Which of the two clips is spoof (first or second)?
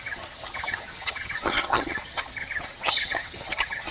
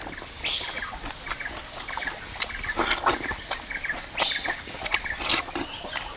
first